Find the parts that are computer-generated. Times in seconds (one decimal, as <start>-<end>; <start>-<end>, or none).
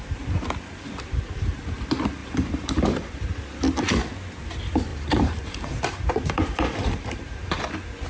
2.2-3.2; 4.9-7.6